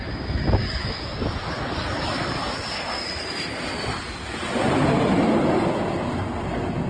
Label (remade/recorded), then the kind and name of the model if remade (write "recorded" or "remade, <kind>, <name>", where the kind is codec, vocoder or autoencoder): recorded